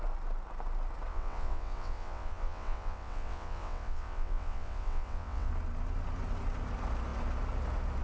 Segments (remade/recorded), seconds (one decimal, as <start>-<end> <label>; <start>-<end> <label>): 0.0-1.1 recorded; 1.1-5.5 remade; 5.5-8.0 recorded